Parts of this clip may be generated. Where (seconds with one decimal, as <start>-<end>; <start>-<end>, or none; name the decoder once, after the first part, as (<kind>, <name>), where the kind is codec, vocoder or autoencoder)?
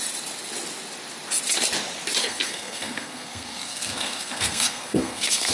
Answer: 2.2-5.5 (codec, SNAC)